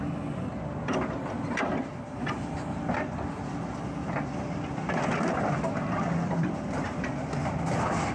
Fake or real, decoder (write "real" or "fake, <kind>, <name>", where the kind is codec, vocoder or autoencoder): real